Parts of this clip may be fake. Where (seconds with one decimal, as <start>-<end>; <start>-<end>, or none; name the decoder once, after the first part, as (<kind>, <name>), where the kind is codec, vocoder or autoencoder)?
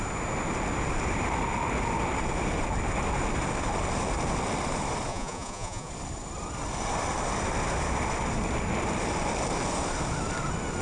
5.1-5.9 (vocoder, Vocos)